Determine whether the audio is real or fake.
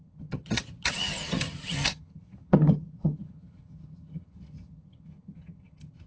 fake